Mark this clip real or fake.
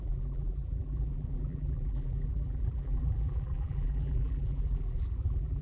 fake